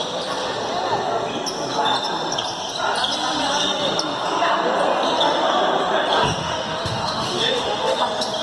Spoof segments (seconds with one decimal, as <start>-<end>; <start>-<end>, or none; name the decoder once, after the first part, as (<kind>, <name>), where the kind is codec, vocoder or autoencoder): 6.4-8.0 (autoencoder, DAC-VAE)